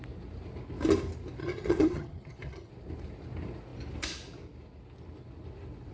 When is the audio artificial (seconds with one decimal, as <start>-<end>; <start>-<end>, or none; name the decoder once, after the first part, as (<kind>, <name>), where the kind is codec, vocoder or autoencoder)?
1.4-2.7 (vocoder, HiFi-GAN)